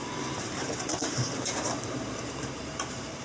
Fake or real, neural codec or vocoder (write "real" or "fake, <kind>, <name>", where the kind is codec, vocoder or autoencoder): fake, vocoder, BigVGAN v2